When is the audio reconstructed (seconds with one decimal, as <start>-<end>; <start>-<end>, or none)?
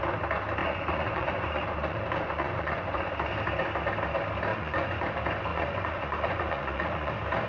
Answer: 0.6-3.1; 4.5-5.1; 5.5-7.1